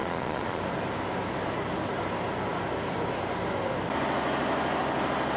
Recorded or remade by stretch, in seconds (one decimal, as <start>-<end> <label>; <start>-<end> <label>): 0.0-0.6 remade; 0.6-5.4 recorded